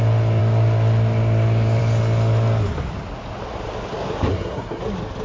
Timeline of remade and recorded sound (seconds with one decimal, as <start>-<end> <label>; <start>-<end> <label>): 0.0-4.3 recorded; 4.3-4.8 remade; 4.8-5.2 recorded